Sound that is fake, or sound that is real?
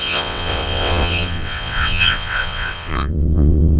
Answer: fake